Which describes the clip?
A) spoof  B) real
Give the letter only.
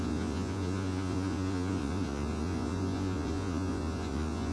A